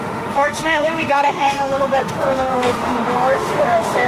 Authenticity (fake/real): fake